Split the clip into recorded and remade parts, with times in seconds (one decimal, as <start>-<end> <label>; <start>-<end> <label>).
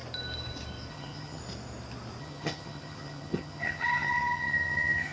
0.0-0.9 recorded; 0.9-1.4 remade; 1.4-2.2 recorded; 2.2-5.1 remade